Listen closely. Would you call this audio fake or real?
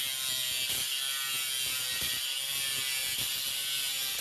real